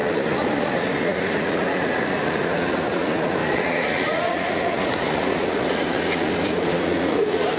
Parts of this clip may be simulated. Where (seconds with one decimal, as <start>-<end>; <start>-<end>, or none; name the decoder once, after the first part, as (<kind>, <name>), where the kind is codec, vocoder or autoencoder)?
0.0-7.6 (vocoder, Vocos)